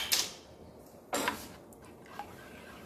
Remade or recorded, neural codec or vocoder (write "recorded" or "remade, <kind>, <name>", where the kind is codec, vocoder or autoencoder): recorded